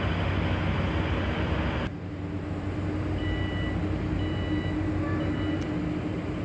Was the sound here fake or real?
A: real